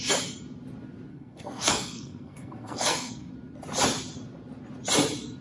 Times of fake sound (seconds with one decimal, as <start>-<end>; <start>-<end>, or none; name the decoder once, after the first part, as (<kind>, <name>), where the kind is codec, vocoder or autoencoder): 1.1-3.3 (codec, SNAC)